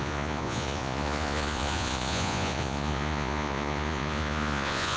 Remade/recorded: remade